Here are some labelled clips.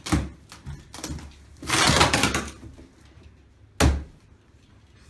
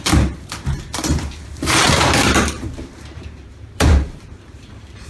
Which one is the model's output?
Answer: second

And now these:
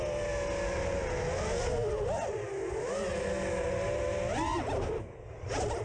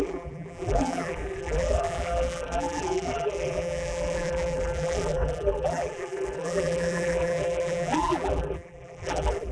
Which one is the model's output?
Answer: second